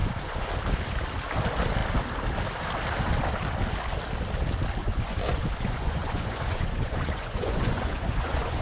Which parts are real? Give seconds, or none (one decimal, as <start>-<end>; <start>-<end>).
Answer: 0.5-4.8